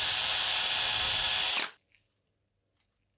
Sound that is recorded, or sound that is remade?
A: recorded